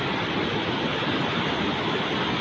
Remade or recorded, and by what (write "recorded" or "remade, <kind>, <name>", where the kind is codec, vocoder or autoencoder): recorded